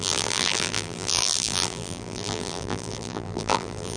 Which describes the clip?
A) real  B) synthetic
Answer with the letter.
B